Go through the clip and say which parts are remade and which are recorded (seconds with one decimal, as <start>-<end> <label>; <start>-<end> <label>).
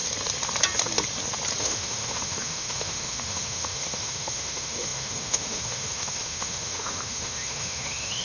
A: 0.0-1.6 recorded; 1.6-8.2 remade